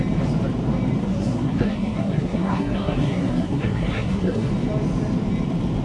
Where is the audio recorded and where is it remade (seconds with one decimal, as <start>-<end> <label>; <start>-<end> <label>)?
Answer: 0.0-1.0 recorded; 1.0-4.5 remade; 4.5-5.8 recorded